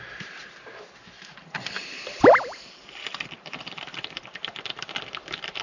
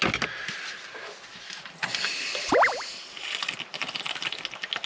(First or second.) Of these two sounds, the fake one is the first